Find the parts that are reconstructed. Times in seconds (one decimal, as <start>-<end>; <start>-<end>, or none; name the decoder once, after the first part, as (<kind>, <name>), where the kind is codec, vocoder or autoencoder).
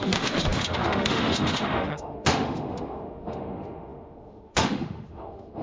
0.0-5.6 (autoencoder, DAC-VAE)